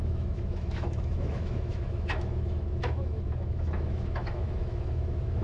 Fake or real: fake